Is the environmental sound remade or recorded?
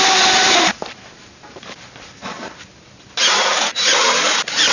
remade